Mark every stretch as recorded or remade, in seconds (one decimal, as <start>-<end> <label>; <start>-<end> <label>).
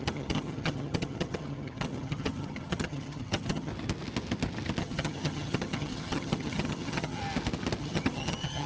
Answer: 0.0-3.7 remade; 3.7-4.8 recorded; 4.8-7.2 remade; 7.2-7.8 recorded; 7.8-8.7 remade